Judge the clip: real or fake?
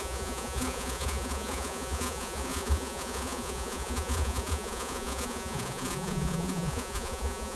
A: fake